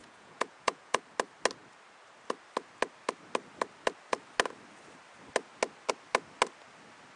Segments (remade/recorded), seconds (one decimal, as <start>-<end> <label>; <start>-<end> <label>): 0.0-1.0 remade; 1.0-7.2 recorded